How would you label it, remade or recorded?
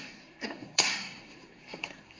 remade